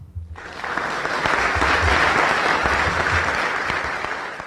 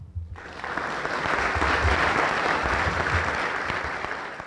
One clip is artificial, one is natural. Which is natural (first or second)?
first